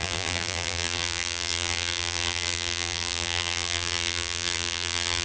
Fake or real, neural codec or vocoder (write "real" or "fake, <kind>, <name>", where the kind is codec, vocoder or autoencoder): fake, vocoder, BigVGAN v2